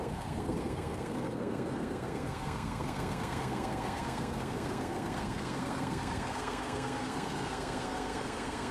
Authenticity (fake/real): fake